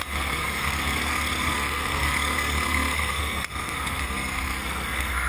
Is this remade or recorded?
remade